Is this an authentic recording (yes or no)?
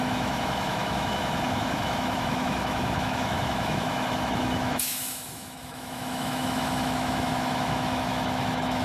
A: no